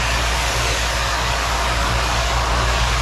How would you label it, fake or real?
fake